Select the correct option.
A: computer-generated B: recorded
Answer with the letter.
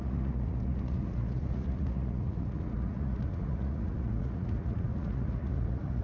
A